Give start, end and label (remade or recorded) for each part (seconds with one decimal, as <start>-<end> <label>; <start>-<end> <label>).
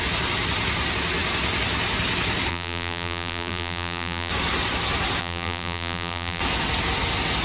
0.0-2.5 recorded; 2.5-4.3 remade; 4.3-5.2 recorded; 5.2-6.4 remade; 6.4-7.4 recorded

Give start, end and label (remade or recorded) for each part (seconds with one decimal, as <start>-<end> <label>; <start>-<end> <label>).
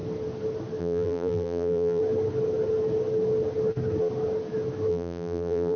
0.0-0.8 recorded; 0.8-2.0 remade; 2.0-4.9 recorded; 4.9-5.8 remade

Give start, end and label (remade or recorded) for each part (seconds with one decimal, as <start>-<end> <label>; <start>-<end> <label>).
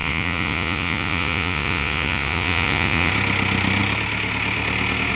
0.0-3.1 remade; 3.1-5.1 recorded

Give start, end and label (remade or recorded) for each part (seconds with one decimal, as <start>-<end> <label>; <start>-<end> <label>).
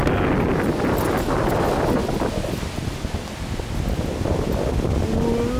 0.0-5.6 recorded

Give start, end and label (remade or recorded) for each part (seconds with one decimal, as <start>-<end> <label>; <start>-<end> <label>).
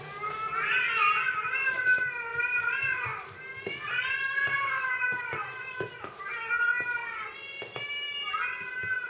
0.0-2.3 recorded; 2.3-6.5 remade; 6.5-9.1 recorded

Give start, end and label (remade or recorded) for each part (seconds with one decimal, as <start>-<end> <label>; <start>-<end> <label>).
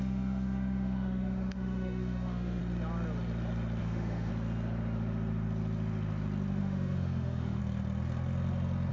0.0-2.6 remade; 2.6-3.8 recorded; 3.8-4.3 remade; 4.3-6.6 recorded; 6.6-7.6 remade; 7.6-8.9 recorded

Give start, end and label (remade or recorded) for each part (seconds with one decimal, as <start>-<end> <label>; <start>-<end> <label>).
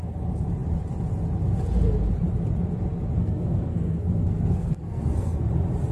0.0-3.2 recorded; 3.2-5.5 remade; 5.5-5.9 recorded